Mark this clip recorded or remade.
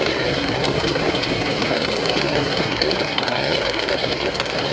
remade